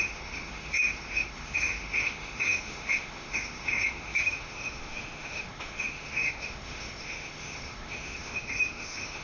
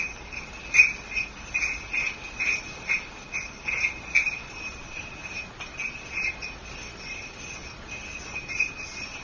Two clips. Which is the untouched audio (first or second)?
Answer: second